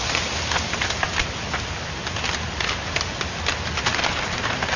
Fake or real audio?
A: real